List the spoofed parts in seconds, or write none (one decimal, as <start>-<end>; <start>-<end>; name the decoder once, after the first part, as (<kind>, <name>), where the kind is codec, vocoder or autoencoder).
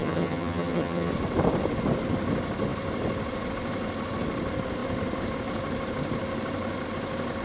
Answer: 0.0-1.1 (vocoder, HiFi-GAN)